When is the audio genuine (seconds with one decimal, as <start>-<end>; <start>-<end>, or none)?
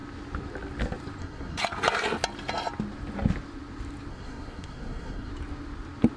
0.0-1.2; 1.6-4.1; 5.3-6.2